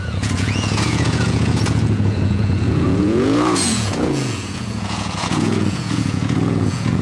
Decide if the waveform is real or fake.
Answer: fake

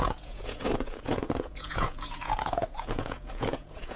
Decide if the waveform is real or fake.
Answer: fake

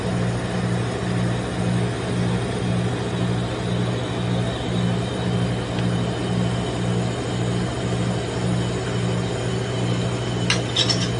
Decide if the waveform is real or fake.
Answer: real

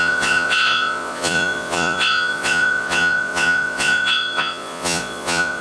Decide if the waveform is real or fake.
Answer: fake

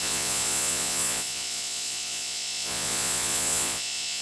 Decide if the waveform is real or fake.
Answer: fake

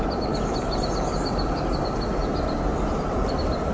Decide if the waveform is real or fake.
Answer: real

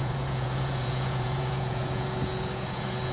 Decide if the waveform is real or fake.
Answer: fake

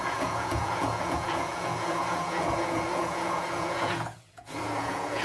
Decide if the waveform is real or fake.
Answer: fake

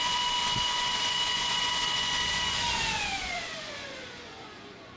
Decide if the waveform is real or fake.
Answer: fake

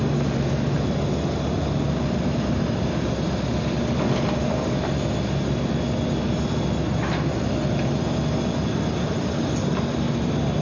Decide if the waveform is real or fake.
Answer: real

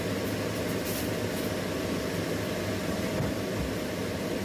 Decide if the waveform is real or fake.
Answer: real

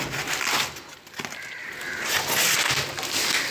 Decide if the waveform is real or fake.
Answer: real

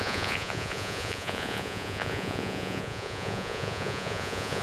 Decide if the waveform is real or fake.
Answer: fake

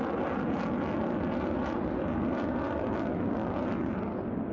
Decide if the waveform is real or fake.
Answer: real